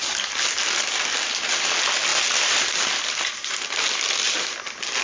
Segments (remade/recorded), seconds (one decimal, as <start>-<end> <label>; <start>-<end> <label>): 0.0-5.0 recorded